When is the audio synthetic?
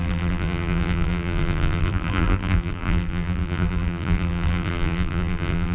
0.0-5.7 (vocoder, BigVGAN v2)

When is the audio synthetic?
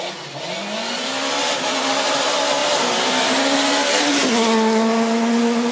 none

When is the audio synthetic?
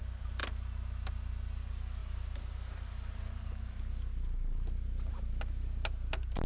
2.0-5.1 (vocoder, BigVGAN v2)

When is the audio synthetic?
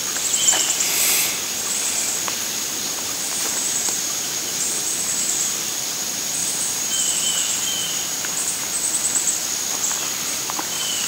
2.9-4.7 (vocoder, BigVGAN v2); 6.4-7.0; 7.8-8.5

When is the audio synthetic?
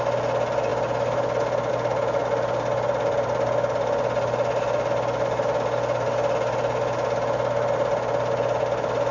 none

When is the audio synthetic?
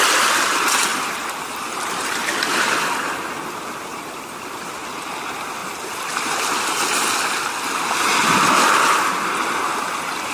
0.9-2.3 (vocoder, BigVGAN v2); 3.9-5.1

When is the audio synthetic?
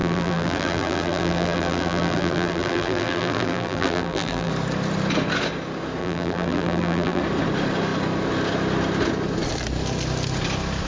0.0-4.5 (vocoder, BigVGAN v2); 6.0-7.2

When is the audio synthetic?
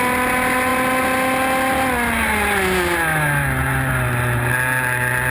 none